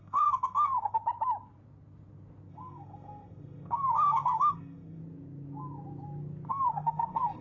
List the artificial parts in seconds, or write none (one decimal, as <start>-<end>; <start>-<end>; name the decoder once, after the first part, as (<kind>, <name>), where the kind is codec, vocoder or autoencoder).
0.0-1.0 (codec, SNAC); 2.5-5.0; 6.5-7.4